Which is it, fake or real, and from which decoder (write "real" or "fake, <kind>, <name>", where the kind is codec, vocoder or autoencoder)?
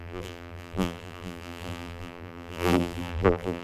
fake, vocoder, BigVGAN v2